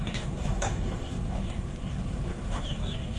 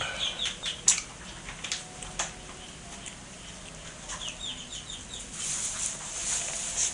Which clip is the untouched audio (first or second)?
second